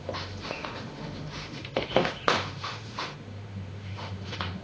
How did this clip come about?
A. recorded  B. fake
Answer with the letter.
B